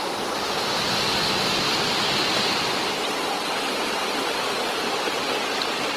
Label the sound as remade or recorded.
recorded